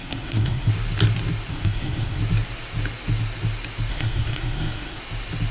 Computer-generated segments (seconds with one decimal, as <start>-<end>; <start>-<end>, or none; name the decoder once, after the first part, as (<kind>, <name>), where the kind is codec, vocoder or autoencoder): 0.0-0.7 (codec, SNAC); 1.5-2.2; 3.9-5.0